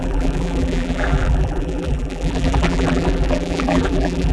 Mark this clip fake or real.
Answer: fake